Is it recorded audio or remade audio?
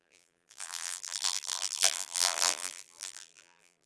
remade